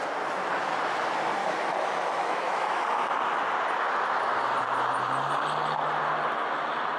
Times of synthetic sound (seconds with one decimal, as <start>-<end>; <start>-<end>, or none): 1.4-3.1